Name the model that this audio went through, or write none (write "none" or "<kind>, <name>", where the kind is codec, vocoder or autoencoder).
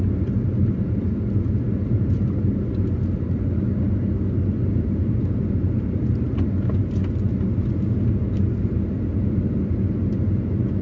none